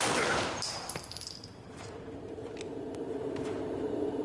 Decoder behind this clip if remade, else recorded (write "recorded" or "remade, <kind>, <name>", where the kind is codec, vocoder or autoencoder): recorded